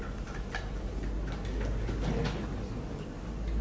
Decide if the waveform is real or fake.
real